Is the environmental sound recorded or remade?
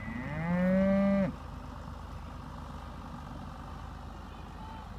recorded